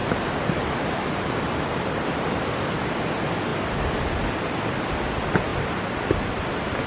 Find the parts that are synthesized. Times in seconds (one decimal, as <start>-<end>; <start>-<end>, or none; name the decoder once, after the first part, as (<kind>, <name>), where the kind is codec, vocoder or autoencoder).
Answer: 0.0-2.1 (vocoder, BigVGAN v2)